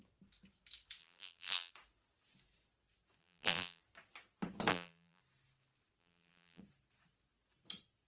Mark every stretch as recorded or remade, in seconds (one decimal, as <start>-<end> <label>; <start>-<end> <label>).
0.0-1.0 recorded; 1.0-1.7 remade; 1.7-3.2 recorded; 3.2-3.8 remade; 3.8-4.7 recorded; 4.7-5.2 remade; 5.2-6.0 recorded; 6.0-6.6 remade; 6.6-8.1 recorded